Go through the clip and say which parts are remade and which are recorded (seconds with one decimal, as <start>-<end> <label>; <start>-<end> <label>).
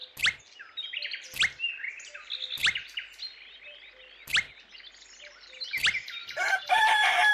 0.0-7.3 recorded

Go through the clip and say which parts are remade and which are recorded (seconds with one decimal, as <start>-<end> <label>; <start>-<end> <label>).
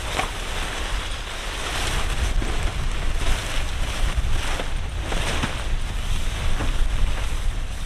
0.0-7.9 recorded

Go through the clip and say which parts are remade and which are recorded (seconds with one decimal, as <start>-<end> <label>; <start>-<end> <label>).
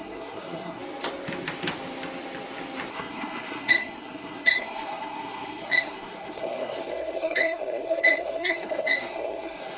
0.0-0.8 remade; 0.8-2.9 recorded; 2.9-9.8 remade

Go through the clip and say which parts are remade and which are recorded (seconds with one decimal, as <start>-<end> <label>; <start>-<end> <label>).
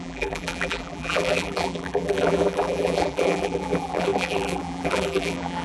0.0-5.6 remade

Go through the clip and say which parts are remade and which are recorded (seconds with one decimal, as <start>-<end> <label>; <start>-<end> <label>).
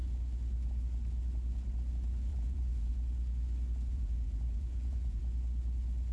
0.0-2.3 recorded; 2.3-2.9 remade; 2.9-3.9 recorded; 3.9-5.2 remade; 5.2-6.1 recorded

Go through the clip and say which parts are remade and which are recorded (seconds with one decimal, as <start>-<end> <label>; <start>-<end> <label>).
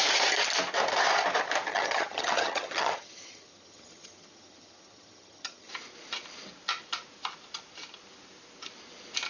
0.0-1.7 recorded; 1.7-5.7 remade; 5.7-9.3 recorded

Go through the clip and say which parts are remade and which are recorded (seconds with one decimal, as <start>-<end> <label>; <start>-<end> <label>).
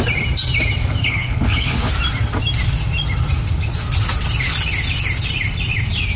0.0-1.0 recorded; 1.0-1.9 remade; 1.9-6.2 recorded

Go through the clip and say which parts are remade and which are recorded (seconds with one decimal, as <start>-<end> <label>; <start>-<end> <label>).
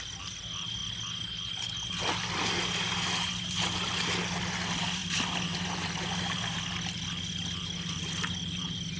0.0-9.0 recorded